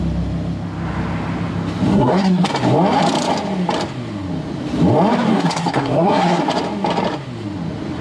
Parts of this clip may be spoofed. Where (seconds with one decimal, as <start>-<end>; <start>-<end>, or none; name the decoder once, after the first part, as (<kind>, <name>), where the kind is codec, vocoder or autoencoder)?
1.9-2.5 (codec, SNAC); 5.3-6.4